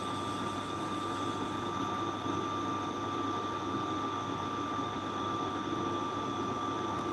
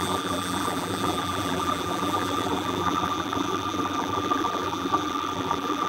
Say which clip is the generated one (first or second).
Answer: second